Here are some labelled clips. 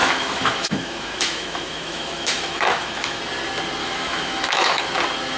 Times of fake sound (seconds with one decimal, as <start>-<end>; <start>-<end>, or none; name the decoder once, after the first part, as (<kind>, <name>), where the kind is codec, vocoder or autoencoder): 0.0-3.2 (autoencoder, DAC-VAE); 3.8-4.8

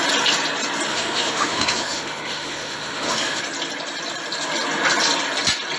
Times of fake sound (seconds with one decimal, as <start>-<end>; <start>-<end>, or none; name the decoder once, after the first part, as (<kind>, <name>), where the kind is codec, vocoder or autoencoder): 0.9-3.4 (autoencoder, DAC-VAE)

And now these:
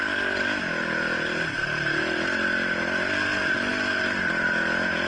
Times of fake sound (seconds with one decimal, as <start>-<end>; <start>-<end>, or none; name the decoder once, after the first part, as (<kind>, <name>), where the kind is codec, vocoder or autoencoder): none